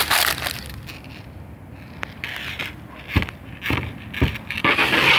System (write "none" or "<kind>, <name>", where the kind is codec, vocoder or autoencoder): none